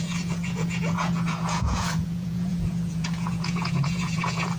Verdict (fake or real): fake